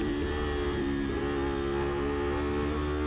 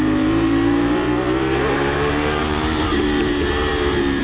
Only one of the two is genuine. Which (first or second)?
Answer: first